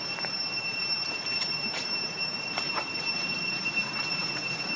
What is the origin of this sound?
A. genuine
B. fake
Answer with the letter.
B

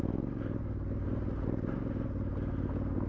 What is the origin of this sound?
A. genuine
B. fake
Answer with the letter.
A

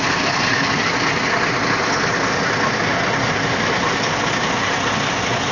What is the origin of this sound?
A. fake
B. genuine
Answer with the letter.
B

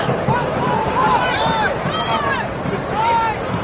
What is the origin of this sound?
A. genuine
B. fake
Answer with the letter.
B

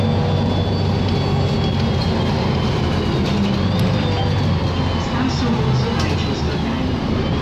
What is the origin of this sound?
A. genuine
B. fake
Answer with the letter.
A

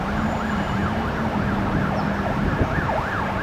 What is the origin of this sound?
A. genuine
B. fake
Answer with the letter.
A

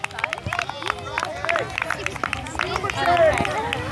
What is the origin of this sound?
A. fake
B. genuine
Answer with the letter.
B